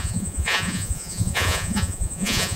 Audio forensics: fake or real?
fake